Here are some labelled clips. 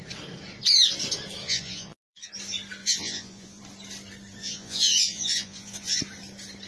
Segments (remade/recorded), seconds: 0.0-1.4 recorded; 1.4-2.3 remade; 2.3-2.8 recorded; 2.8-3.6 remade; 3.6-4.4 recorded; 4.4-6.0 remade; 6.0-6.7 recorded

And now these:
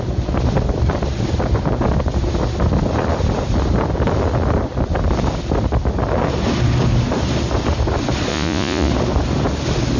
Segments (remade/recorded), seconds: 0.0-8.3 recorded; 8.3-8.9 remade; 8.9-10.0 recorded

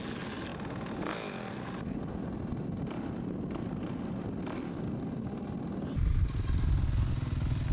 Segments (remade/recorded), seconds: 0.0-7.7 recorded

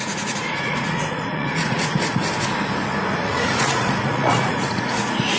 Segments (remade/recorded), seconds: 0.0-2.2 remade; 2.2-3.0 recorded; 3.0-5.4 remade

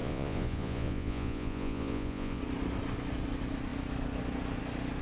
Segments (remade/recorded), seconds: 0.0-2.4 remade; 2.4-5.0 recorded